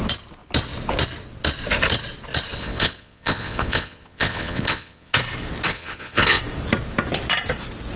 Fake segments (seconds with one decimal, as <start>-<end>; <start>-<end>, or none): 2.6-5.1; 5.7-6.4